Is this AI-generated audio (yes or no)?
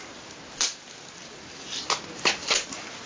no